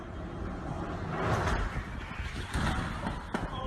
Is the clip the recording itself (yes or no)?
yes